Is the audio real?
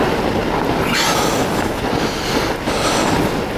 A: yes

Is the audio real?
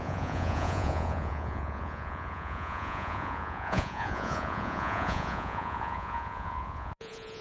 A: no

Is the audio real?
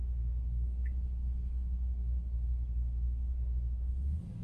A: no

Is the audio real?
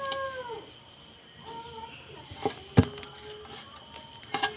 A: yes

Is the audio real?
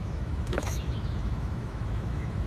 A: no